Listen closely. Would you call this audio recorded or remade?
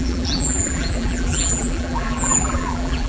remade